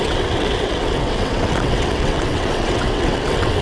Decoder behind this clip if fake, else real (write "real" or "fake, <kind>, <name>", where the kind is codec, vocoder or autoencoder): fake, vocoder, WaveNeXt